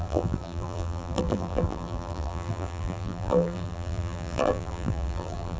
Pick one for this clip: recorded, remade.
remade